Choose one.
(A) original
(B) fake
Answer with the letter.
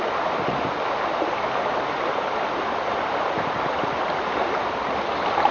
A